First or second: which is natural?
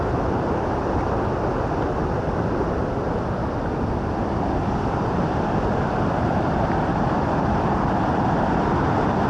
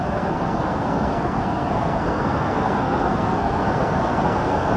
first